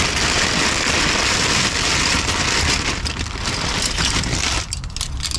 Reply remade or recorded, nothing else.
recorded